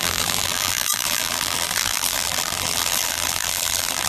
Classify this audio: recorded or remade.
remade